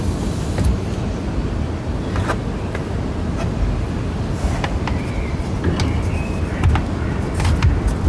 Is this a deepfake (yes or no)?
no